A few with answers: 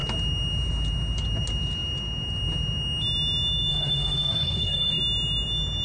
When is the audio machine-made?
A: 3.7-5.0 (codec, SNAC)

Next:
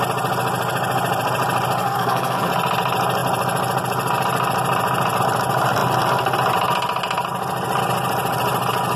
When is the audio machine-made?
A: 1.8-2.5 (codec, SNAC)